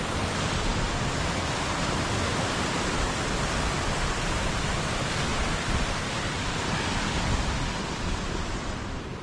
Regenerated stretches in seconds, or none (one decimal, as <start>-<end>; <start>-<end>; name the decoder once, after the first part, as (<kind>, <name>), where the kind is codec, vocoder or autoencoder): none